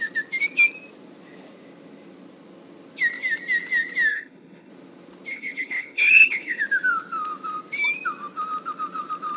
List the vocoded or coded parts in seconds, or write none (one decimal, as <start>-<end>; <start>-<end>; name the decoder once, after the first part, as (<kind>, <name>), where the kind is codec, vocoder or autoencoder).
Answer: 4.1-4.7 (codec, HILCodec); 5.3-6.6

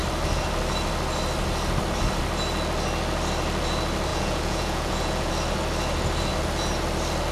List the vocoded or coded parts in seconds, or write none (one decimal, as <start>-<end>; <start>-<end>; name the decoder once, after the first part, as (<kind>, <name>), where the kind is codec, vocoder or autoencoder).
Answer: 4.1-5.3 (vocoder, Vocos)

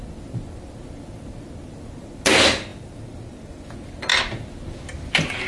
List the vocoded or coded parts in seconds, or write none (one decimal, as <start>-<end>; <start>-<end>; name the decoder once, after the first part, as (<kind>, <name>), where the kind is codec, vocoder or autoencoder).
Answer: none

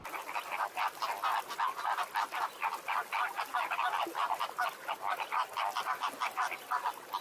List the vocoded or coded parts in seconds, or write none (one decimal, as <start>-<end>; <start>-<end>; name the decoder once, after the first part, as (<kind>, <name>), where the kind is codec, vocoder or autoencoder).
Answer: none